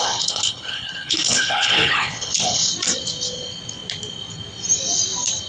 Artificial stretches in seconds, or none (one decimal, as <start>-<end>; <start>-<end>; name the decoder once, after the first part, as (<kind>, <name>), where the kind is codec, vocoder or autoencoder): 0.0-2.7 (codec, HILCodec)